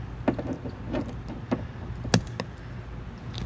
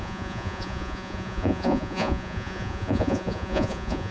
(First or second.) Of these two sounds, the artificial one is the second